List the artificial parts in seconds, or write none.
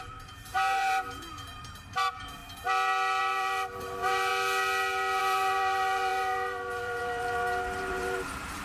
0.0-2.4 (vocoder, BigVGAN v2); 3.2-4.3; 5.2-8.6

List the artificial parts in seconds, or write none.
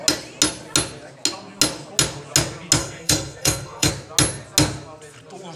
2.8-3.9 (codec, SNAC)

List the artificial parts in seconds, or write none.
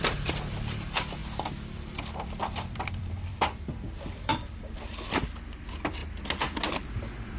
0.0-6.0 (vocoder, BigVGAN v2); 6.7-7.4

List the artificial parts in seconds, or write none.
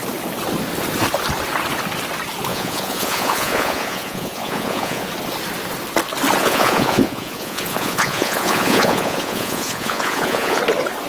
2.5-5.1 (vocoder, Vocos); 6.4-10.6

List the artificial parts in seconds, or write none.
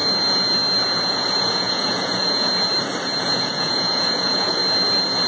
1.1-2.5 (vocoder, Vocos); 3.2-4.6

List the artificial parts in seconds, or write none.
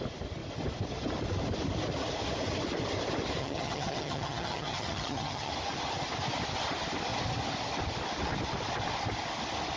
3.4-5.5 (vocoder, HiFi-GAN)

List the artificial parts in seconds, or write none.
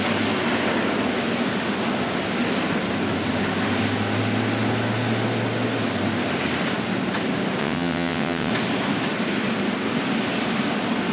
7.6-8.5 (vocoder, WaveNeXt)